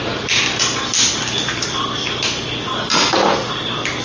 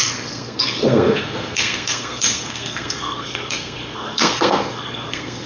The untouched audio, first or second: first